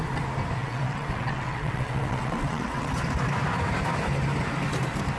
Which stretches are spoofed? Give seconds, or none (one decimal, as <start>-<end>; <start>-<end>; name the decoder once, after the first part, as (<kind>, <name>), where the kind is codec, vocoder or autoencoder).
0.6-2.9 (vocoder, WaveNeXt)